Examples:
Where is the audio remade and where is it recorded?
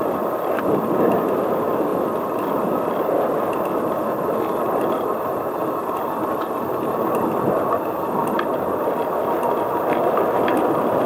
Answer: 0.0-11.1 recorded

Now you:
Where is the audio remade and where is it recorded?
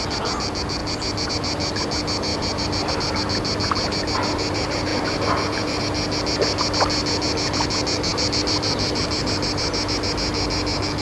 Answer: 0.0-2.3 recorded; 2.3-2.9 remade; 2.9-4.9 recorded; 4.9-5.8 remade; 5.8-8.1 recorded; 8.1-9.6 remade; 9.6-11.0 recorded